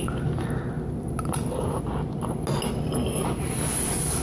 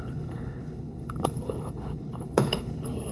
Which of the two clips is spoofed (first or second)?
second